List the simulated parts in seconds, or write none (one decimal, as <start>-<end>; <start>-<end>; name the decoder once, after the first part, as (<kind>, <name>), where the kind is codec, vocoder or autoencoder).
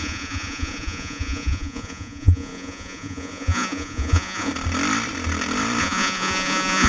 0.0-4.5 (vocoder, Vocos); 5.8-6.9